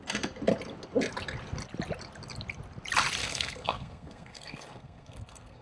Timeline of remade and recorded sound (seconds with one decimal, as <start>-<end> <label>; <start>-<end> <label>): 0.0-3.2 recorded; 3.2-5.6 remade